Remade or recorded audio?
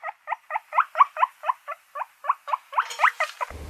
recorded